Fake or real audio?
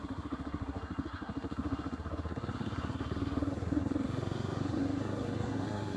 fake